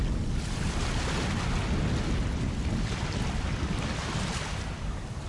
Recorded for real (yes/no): yes